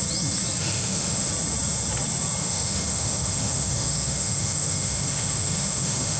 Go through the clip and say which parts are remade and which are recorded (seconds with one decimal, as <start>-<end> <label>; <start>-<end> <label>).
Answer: 0.0-0.6 recorded; 0.6-1.3 remade; 1.3-2.4 recorded; 2.4-6.2 remade